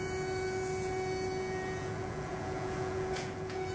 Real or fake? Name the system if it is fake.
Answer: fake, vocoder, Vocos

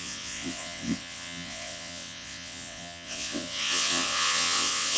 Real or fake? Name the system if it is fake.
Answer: fake, vocoder, WaveNeXt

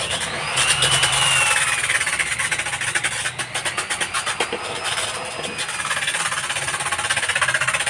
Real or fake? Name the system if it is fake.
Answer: real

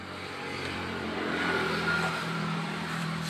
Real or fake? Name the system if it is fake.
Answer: fake, vocoder, BigVGAN v2